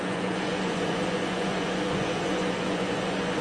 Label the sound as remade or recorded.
remade